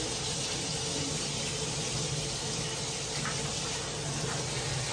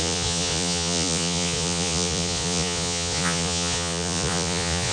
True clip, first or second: first